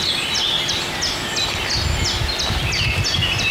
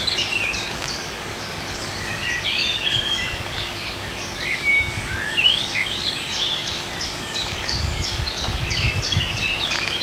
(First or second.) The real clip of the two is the first